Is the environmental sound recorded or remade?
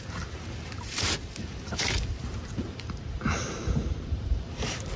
remade